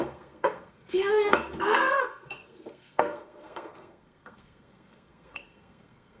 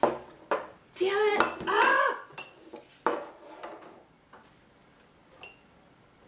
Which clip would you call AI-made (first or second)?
first